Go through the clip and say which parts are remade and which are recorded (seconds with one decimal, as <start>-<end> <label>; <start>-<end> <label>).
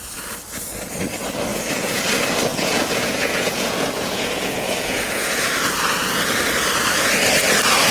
0.0-1.5 recorded; 1.5-2.0 remade; 2.0-2.5 recorded; 2.5-5.5 remade; 5.5-7.9 recorded